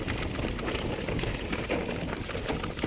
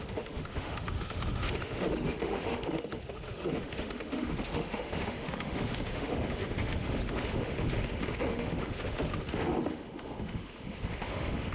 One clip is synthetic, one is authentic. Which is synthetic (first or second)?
second